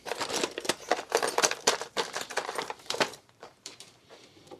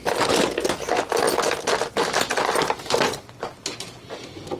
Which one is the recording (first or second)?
second